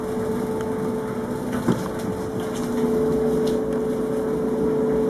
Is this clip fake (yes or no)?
no